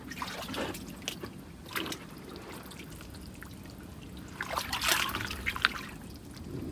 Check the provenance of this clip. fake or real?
real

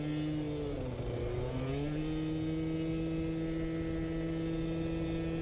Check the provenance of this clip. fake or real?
real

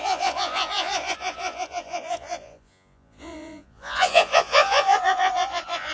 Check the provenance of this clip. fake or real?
fake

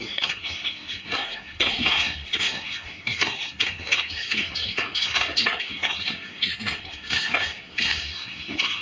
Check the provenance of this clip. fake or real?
fake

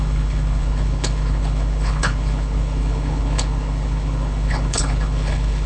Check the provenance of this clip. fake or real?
fake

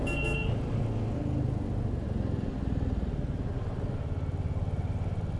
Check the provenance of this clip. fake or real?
real